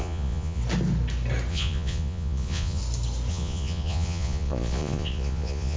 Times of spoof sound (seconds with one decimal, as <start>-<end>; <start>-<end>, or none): 0.0-0.6; 1.5-2.8; 3.3-5.8